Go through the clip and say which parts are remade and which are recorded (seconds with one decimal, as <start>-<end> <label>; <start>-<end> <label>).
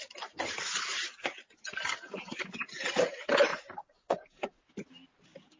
0.0-3.5 recorded; 3.5-4.6 remade; 4.6-5.6 recorded